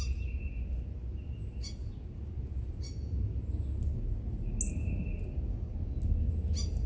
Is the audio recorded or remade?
recorded